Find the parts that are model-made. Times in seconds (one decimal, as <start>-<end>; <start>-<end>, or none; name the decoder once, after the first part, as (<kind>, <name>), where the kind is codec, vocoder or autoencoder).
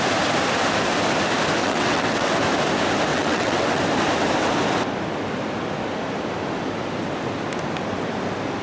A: 1.6-2.3 (vocoder, WaveNeXt); 3.1-3.8